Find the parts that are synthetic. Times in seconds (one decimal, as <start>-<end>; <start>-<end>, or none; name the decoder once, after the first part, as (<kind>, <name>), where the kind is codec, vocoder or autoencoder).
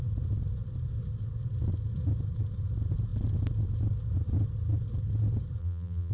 5.6-6.1 (vocoder, BigVGAN v2)